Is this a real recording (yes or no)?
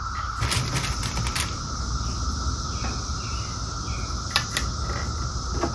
yes